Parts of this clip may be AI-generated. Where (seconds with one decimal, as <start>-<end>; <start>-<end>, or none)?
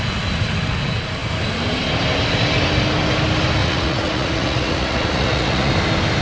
3.6-5.7